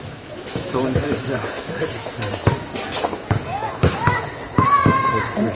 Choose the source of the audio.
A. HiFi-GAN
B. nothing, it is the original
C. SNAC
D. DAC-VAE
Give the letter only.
D